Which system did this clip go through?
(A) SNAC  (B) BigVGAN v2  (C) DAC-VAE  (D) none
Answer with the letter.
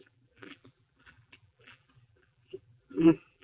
B